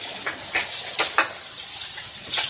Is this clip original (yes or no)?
yes